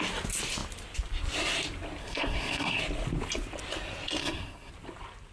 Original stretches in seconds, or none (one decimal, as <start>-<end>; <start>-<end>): 0.0-2.0; 2.8-4.2; 4.7-5.3